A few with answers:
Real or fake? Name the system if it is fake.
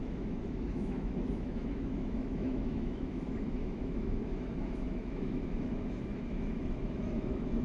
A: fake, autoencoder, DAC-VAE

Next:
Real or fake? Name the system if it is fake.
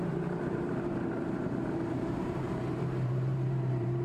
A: fake, vocoder, BigVGAN v2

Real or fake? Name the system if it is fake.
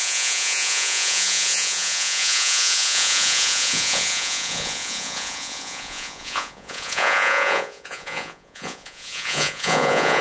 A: fake, vocoder, Vocos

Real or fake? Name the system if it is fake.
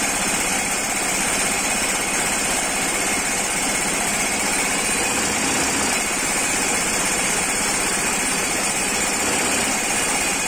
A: real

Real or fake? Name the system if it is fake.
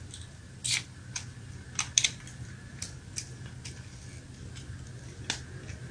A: real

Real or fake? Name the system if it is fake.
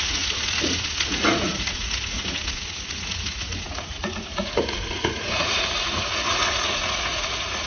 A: fake, vocoder, Vocos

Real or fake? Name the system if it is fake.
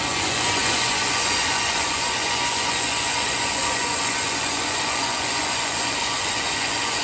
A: fake, vocoder, Vocos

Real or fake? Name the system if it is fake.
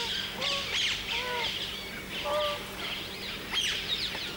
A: real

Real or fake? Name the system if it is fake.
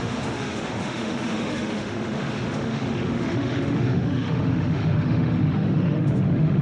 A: fake, autoencoder, DAC-VAE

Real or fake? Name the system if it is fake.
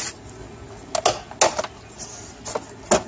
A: real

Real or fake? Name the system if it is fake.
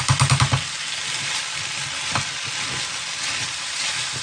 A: real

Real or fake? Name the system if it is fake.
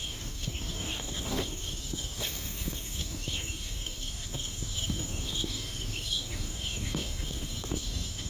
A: fake, codec, DAC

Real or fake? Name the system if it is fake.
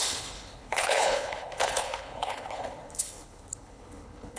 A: fake, codec, HILCodec